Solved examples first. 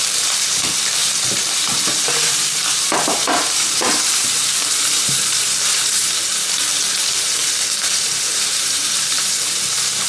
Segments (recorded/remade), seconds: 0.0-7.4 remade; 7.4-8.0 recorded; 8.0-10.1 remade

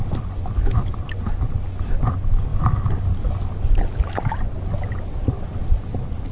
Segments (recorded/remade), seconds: 0.0-6.3 recorded